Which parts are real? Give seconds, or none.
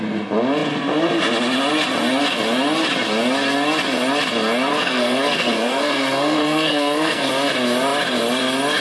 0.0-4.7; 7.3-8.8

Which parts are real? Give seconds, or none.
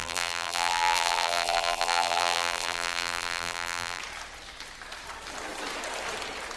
4.0-6.6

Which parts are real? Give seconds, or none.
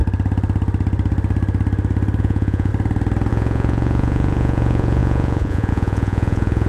0.0-2.2; 2.7-3.3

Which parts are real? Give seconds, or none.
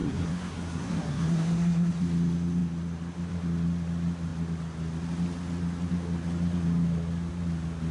1.9-7.9